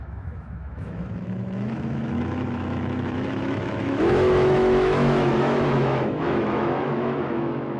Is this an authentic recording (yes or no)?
no